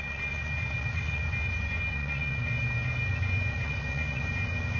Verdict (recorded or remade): remade